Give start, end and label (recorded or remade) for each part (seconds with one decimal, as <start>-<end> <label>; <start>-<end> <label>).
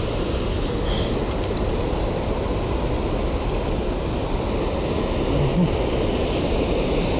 0.0-7.2 recorded